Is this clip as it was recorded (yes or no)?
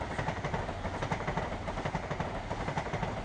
yes